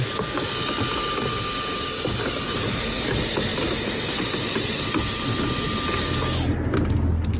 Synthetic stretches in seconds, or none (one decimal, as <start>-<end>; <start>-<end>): 3.5-4.1